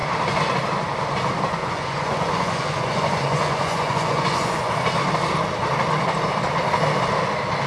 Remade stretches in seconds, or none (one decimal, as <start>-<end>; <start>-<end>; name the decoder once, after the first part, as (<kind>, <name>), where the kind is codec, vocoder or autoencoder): 1.6-4.7 (vocoder, Vocos)